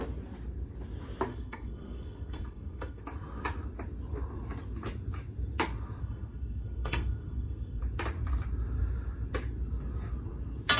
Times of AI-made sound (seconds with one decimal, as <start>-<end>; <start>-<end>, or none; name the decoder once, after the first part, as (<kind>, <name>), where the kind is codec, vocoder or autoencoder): 1.3-3.0 (codec, SNAC); 6.0-7.8